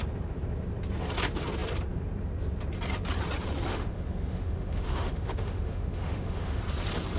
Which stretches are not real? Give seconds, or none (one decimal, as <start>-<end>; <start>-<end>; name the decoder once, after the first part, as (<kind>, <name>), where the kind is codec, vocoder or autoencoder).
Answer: 3.7-6.6 (autoencoder, DAC-VAE)